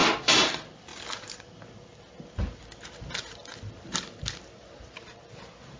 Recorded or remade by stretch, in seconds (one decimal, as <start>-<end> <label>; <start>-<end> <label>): 0.0-0.5 recorded; 0.5-0.9 remade; 0.9-4.4 recorded; 4.4-5.8 remade